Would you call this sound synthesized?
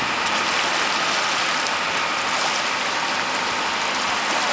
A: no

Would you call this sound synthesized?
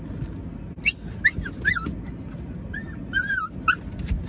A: no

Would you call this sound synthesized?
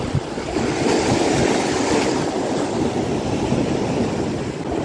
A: no